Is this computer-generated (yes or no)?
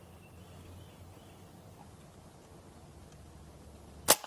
no